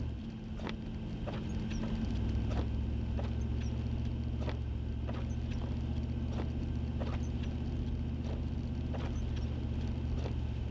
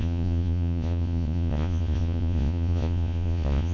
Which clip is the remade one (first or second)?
second